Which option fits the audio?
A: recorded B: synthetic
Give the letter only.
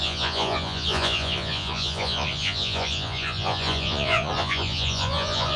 B